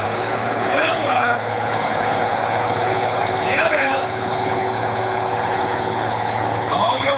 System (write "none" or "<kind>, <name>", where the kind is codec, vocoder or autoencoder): codec, HILCodec